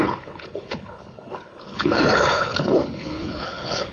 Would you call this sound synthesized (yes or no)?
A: yes